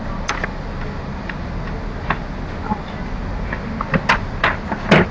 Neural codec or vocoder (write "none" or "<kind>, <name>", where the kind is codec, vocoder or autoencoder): none